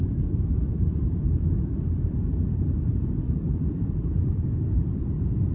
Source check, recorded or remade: remade